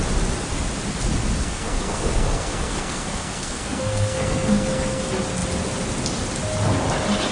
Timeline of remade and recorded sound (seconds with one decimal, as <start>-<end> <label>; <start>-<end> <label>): 0.0-1.4 recorded; 1.4-5.0 remade; 5.0-7.3 recorded

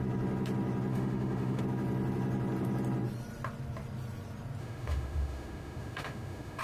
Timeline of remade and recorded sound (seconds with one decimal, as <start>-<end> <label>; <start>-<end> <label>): 0.0-0.9 recorded; 0.9-1.6 remade; 1.6-4.6 recorded; 4.6-6.6 remade

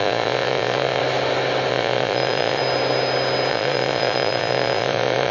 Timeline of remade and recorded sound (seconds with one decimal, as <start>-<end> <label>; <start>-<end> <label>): 0.0-1.0 remade; 1.0-1.7 recorded; 1.7-2.6 remade; 2.6-3.5 recorded; 3.5-5.3 remade

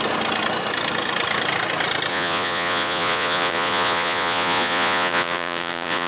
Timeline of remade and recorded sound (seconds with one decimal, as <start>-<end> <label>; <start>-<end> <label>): 0.0-2.1 recorded; 2.1-6.1 remade